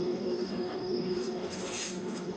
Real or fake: fake